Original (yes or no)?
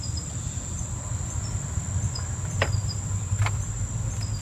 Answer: yes